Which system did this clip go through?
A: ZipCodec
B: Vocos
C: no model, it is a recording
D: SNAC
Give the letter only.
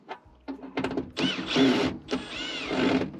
C